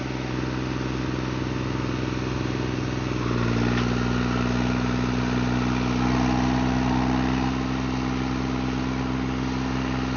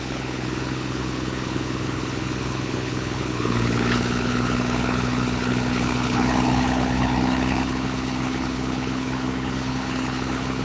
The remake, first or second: second